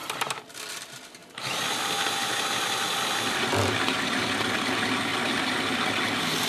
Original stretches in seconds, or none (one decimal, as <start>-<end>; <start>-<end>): 0.0-6.5